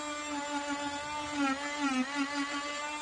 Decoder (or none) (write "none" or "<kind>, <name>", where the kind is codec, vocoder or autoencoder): none